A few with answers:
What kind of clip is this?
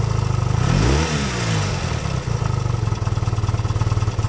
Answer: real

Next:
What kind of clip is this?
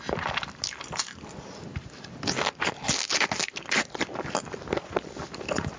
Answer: real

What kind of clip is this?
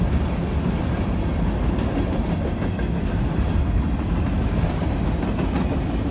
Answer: real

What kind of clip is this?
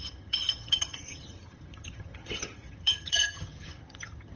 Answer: fake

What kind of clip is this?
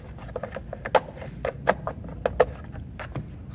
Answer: real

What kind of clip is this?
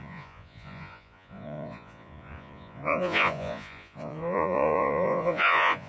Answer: fake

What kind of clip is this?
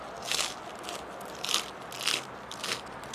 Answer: real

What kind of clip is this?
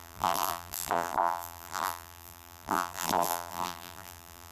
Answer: fake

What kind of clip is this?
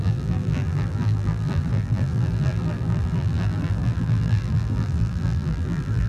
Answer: fake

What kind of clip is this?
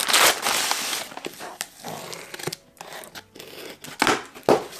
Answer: real